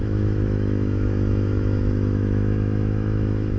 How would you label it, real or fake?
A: fake